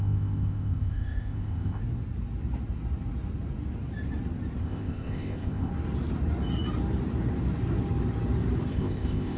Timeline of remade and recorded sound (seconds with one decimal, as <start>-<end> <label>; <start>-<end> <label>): 0.0-1.8 remade; 1.8-4.6 recorded; 4.6-5.7 remade; 5.7-8.7 recorded; 8.7-9.4 remade